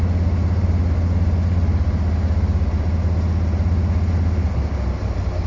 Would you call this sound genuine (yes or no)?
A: yes